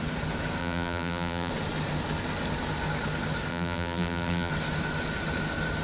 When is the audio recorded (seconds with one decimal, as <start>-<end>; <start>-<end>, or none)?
0.0-0.6; 1.5-3.5; 4.5-5.8